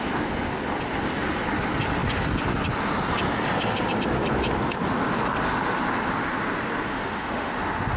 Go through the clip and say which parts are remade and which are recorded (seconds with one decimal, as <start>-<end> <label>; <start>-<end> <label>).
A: 0.0-6.9 recorded; 6.9-7.5 remade; 7.5-8.0 recorded